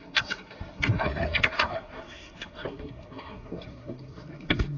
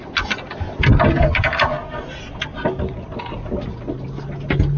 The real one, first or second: second